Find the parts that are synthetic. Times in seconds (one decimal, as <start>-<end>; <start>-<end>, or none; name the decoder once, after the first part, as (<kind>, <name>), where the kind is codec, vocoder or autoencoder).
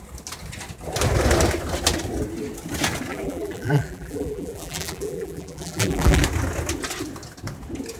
3.1-6.2 (vocoder, BigVGAN v2)